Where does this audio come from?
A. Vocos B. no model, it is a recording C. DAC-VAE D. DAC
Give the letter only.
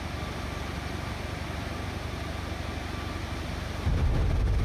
B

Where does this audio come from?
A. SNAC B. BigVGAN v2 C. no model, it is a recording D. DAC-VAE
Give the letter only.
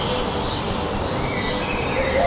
C